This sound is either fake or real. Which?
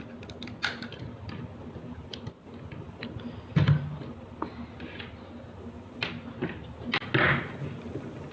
real